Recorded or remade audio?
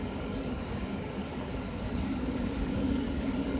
remade